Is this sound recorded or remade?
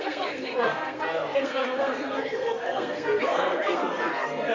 remade